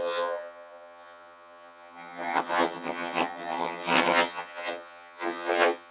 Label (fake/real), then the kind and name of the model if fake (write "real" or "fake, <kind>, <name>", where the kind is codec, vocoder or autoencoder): fake, vocoder, HiFi-GAN